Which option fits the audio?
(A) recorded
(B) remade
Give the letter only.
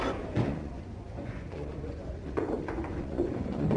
B